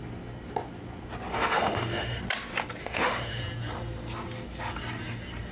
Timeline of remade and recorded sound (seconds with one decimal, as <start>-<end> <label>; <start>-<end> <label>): 0.0-1.3 recorded; 1.3-2.2 remade; 2.2-2.8 recorded; 2.8-3.4 remade; 3.4-5.5 recorded